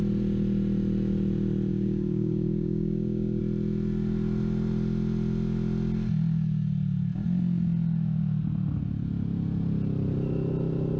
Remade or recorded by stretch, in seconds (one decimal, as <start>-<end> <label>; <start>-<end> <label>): 0.0-1.7 recorded; 1.7-3.4 remade; 3.4-11.0 recorded

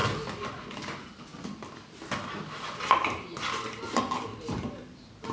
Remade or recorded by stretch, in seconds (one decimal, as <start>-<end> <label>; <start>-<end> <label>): 0.0-5.3 recorded

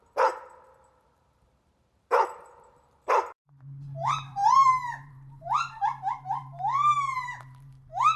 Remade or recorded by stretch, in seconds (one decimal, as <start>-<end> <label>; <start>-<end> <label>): 0.0-8.2 remade

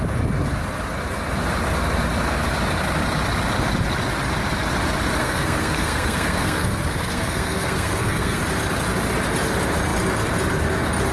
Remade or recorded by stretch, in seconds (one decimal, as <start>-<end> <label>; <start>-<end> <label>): 0.0-5.2 recorded; 5.2-8.4 remade; 8.4-11.1 recorded

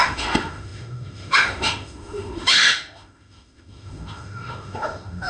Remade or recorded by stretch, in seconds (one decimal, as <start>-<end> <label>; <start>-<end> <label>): 0.0-5.3 remade

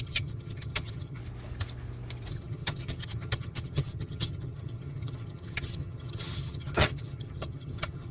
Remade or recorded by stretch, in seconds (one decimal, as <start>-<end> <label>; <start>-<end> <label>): 0.0-1.2 remade; 1.2-2.3 recorded; 2.3-8.1 remade